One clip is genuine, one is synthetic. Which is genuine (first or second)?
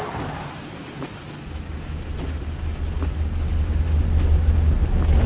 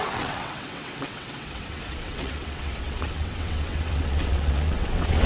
first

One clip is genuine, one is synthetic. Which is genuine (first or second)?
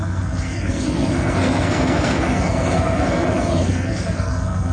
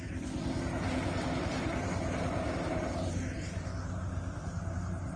second